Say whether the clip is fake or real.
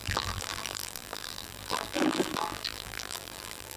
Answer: fake